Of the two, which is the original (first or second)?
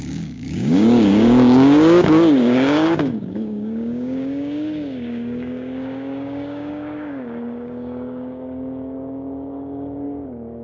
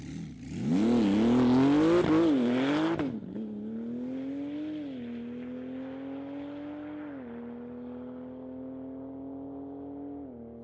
second